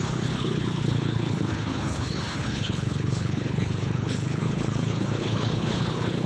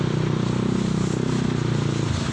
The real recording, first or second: second